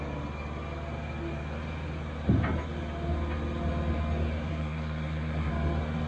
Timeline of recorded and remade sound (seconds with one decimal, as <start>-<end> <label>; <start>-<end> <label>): 0.0-4.5 recorded; 4.5-5.5 remade; 5.5-6.1 recorded